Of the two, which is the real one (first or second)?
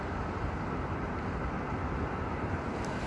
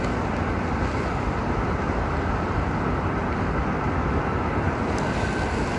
second